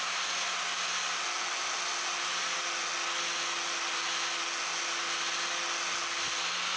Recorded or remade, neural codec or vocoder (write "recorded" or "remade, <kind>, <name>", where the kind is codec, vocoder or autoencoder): recorded